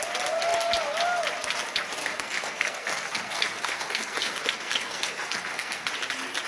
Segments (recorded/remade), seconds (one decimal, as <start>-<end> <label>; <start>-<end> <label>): 0.0-2.0 recorded; 2.0-5.9 remade; 5.9-6.5 recorded